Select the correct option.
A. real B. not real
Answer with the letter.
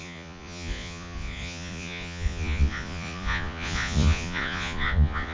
B